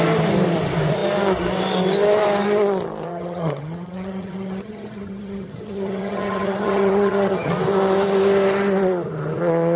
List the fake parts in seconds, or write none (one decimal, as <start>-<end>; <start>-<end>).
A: 3.1-7.5